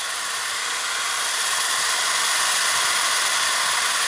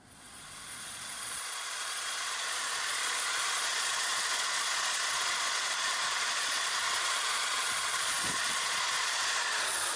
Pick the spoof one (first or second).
second